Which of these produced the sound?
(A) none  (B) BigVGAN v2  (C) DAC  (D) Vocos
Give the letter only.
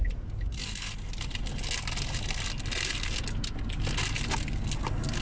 A